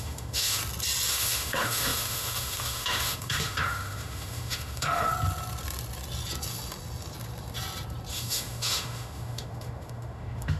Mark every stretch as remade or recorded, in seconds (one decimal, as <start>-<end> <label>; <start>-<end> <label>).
0.0-0.6 remade; 0.6-1.1 recorded; 1.1-5.1 remade; 5.1-8.1 recorded; 8.1-10.6 remade